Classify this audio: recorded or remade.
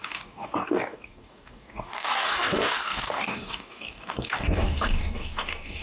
remade